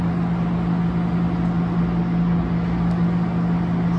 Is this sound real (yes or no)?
yes